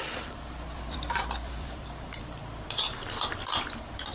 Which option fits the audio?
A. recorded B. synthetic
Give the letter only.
B